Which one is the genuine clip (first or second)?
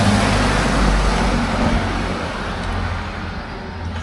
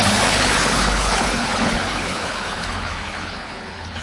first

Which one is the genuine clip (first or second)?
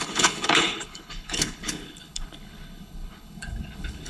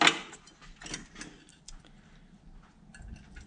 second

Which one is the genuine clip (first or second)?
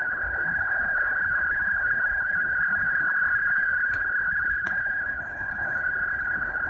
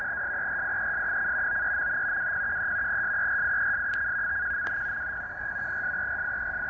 second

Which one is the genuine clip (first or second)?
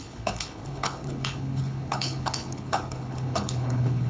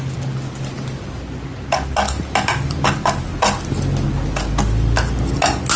second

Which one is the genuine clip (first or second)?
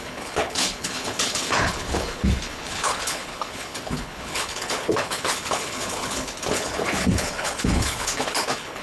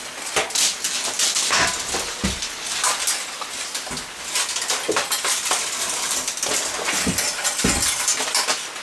second